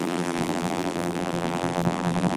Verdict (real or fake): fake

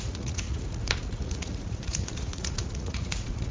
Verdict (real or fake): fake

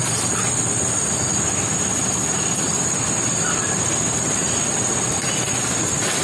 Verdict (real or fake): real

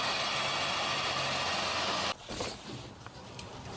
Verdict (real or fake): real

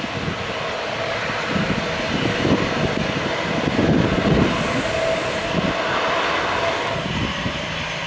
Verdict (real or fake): real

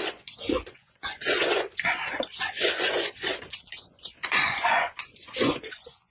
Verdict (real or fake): fake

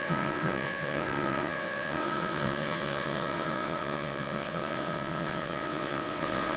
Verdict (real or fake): fake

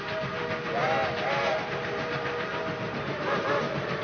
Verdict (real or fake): fake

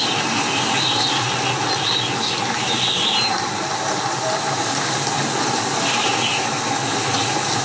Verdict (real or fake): real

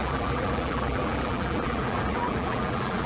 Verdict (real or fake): fake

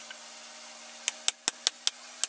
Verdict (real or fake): real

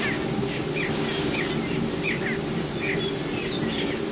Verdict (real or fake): real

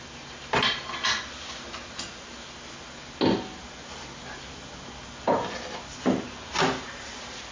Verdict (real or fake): real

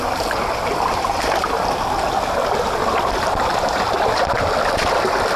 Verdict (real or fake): real